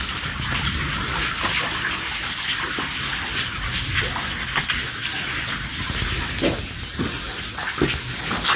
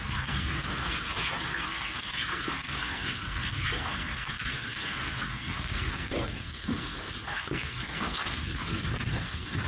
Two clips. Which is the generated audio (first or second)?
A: second